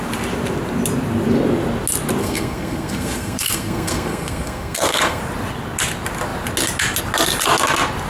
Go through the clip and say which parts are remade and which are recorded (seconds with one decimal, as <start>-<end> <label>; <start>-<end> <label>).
0.0-2.2 recorded; 2.2-5.2 remade; 5.2-8.1 recorded